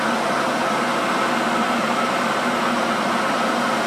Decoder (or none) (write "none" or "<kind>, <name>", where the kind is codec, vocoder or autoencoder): none